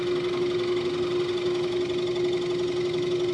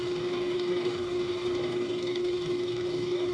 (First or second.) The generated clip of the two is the second